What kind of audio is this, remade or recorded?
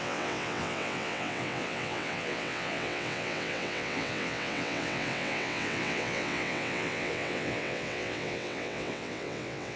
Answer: remade